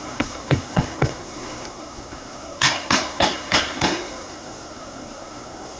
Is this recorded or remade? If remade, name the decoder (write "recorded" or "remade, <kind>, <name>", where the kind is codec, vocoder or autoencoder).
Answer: remade, codec, SNAC